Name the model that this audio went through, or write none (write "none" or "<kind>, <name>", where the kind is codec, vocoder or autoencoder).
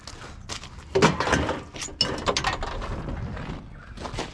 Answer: none